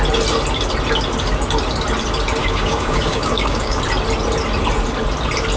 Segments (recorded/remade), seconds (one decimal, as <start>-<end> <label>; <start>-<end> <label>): 0.0-2.4 recorded; 2.4-3.8 remade; 3.8-5.6 recorded